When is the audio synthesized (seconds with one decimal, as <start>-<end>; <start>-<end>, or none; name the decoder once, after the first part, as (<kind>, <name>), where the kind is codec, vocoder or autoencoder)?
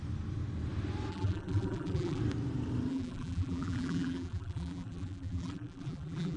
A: 1.1-2.2 (vocoder, BigVGAN v2); 2.9-6.4